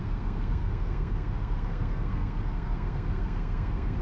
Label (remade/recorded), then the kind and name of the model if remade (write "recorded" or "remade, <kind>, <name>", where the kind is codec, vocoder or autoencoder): remade, codec, SNAC